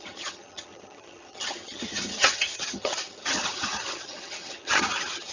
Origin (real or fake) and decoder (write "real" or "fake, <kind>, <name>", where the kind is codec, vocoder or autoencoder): fake, vocoder, HiFi-GAN